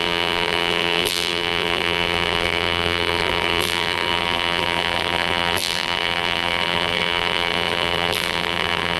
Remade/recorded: remade